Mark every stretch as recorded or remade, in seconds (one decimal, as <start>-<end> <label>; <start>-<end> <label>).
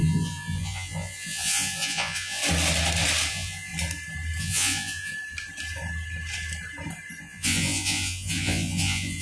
0.0-2.4 remade; 2.4-3.3 recorded; 3.3-3.7 remade; 3.7-4.4 recorded; 4.4-5.1 remade; 5.1-7.2 recorded; 7.2-9.2 remade